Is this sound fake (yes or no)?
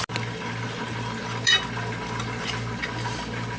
no